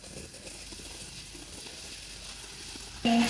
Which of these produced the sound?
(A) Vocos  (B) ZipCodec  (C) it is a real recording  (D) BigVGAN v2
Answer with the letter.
C